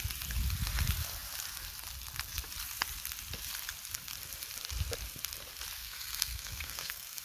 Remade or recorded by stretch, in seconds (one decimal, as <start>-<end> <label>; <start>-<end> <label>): 0.0-5.8 recorded; 5.8-7.2 remade